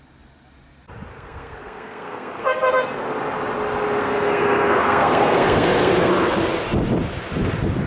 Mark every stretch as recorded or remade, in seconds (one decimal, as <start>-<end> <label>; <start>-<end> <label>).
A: 0.0-1.1 recorded; 1.1-2.7 remade; 2.7-4.0 recorded; 4.0-6.1 remade; 6.1-7.9 recorded